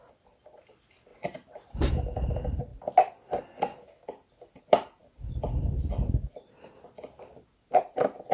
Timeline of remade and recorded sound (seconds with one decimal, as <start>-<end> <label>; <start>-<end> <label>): 0.0-1.1 recorded; 1.1-1.9 remade; 1.9-8.3 recorded